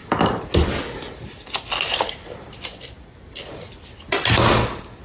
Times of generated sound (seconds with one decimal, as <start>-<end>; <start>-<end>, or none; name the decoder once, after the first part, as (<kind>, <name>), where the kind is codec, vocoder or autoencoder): none